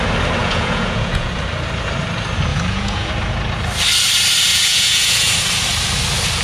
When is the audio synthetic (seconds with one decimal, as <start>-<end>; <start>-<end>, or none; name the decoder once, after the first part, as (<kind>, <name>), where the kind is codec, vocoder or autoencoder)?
0.4-1.3 (vocoder, Vocos); 2.5-3.1; 4.5-5.3

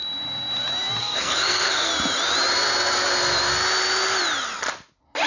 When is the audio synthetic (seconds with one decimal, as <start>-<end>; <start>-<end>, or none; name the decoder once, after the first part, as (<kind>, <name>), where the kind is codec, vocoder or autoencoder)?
1.0-1.9 (codec, SNAC)

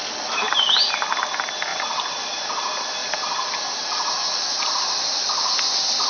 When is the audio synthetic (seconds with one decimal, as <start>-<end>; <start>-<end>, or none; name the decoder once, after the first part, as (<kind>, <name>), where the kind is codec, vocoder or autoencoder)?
0.0-0.9 (vocoder, BigVGAN v2); 1.7-2.4; 3.0-4.6

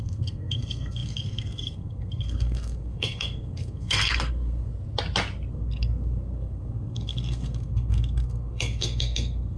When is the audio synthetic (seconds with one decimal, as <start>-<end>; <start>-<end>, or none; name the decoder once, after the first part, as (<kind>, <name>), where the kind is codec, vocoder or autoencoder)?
0.0-4.7 (codec, SNAC); 5.5-9.6